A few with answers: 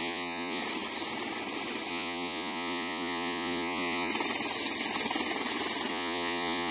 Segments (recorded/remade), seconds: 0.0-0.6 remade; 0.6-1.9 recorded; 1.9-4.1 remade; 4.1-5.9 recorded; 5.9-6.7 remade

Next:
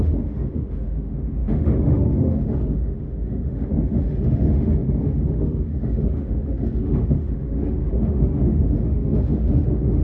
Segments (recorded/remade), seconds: 0.0-10.0 remade

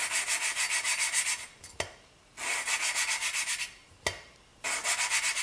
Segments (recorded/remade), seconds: 0.0-5.4 recorded

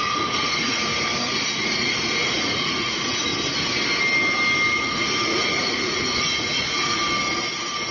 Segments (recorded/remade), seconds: 0.0-0.9 remade; 0.9-1.6 recorded; 1.6-3.3 remade; 3.3-4.7 recorded; 4.7-7.0 remade; 7.0-7.9 recorded

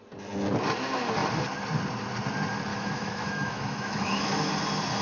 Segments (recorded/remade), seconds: 0.0-2.7 recorded; 2.7-4.5 remade; 4.5-5.0 recorded

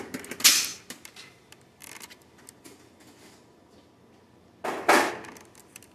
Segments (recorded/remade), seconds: 0.0-5.9 recorded